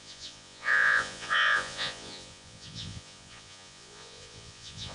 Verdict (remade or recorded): remade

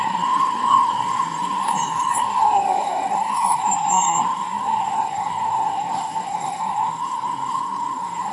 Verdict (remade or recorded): remade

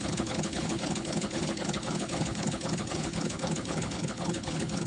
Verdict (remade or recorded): remade